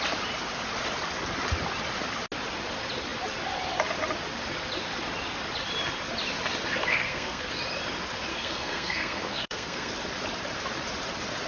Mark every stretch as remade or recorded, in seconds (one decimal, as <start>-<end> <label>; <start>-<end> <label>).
0.0-6.9 recorded; 6.9-7.5 remade; 7.5-8.3 recorded; 8.3-9.9 remade; 9.9-11.5 recorded